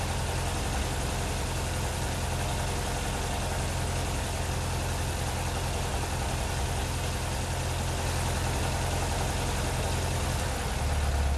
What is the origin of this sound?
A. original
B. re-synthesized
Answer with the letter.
A